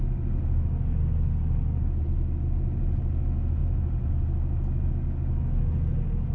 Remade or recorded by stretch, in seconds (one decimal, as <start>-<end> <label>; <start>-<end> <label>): 0.0-3.6 recorded; 3.6-4.1 remade; 4.1-6.3 recorded